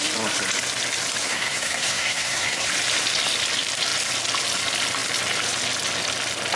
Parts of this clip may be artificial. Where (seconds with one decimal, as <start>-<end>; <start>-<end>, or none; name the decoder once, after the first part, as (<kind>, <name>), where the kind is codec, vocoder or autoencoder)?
1.2-2.7 (codec, SNAC)